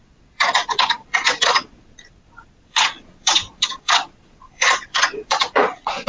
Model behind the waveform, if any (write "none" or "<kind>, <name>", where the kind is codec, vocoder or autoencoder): vocoder, Vocos